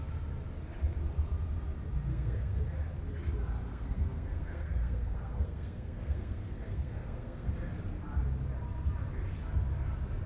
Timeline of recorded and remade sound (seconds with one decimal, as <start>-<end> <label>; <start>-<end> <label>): 0.0-2.1 recorded; 2.1-2.6 remade; 2.6-3.7 recorded; 3.7-7.5 remade; 7.5-10.3 recorded

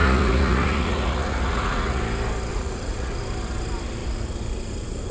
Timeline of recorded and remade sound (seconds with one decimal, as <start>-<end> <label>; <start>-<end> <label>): 0.0-2.0 remade; 2.0-2.5 recorded; 2.5-3.2 remade; 3.2-5.1 recorded

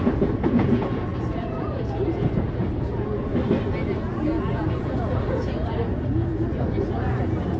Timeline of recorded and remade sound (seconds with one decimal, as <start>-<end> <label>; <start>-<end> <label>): 0.0-3.3 remade; 3.3-4.0 recorded; 4.0-7.6 remade

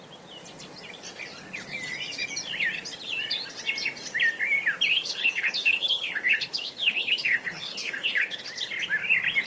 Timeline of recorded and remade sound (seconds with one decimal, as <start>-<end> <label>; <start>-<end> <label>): 0.0-4.9 recorded; 4.9-8.4 remade; 8.4-9.5 recorded

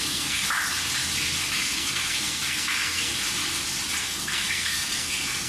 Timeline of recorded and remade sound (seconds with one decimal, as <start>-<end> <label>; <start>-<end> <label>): 0.0-0.4 remade; 0.4-1.5 recorded; 1.5-3.1 remade; 3.1-4.0 recorded; 4.0-5.5 remade

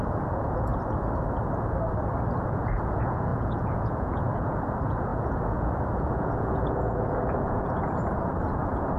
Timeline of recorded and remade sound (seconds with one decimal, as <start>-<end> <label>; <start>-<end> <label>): 0.0-0.7 remade; 0.7-2.4 recorded; 2.4-9.0 remade

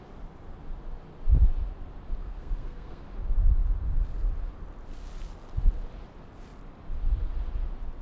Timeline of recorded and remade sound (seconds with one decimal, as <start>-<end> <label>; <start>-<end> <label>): 0.0-2.2 recorded; 2.2-3.0 remade; 3.0-8.0 recorded

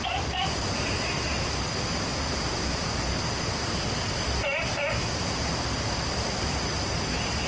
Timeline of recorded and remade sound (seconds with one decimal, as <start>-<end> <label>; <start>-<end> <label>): 0.0-7.5 remade